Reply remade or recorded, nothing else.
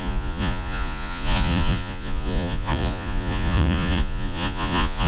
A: remade